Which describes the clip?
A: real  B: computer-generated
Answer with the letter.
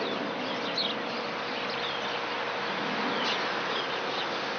A